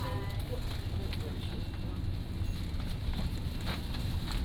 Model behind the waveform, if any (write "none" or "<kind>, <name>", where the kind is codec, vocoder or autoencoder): none